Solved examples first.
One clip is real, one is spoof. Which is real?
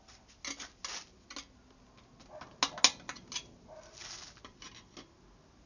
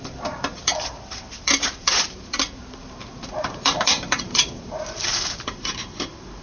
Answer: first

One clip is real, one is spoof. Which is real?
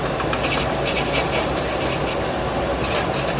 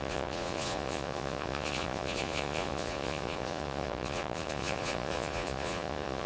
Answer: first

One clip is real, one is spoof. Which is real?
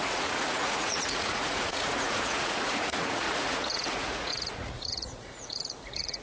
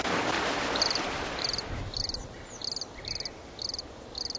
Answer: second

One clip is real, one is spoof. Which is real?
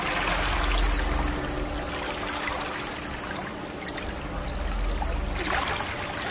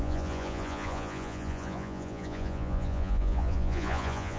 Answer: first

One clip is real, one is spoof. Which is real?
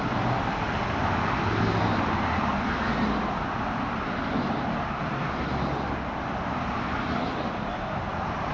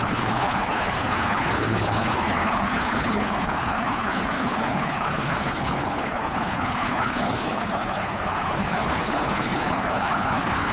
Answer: first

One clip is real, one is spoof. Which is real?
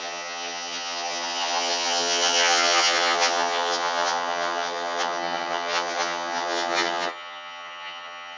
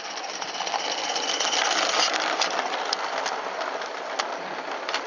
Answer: second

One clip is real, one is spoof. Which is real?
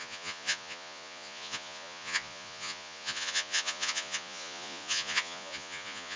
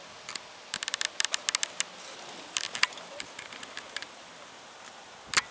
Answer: second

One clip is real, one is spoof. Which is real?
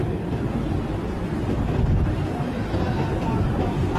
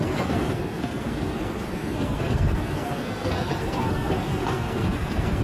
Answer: first